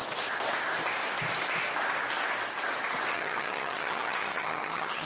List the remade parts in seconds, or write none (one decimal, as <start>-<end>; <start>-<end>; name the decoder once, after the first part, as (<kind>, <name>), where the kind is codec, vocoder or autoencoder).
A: 3.1-5.1 (vocoder, HiFi-GAN)